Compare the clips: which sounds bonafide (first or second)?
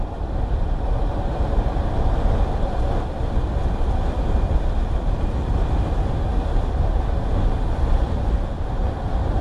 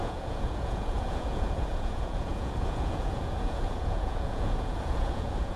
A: first